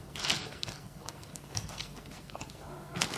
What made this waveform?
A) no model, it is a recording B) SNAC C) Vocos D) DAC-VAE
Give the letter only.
B